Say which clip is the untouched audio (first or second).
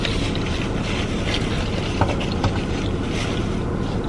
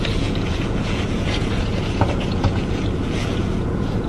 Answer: first